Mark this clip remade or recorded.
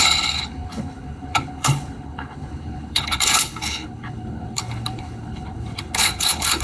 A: remade